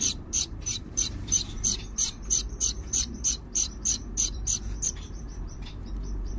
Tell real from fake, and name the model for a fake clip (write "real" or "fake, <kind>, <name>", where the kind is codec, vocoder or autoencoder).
fake, vocoder, BigVGAN v2